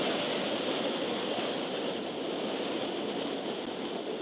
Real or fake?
real